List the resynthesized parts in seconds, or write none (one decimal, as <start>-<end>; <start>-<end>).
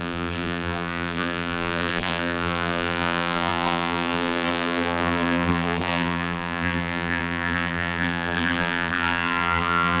0.0-10.0